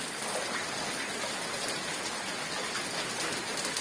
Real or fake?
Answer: real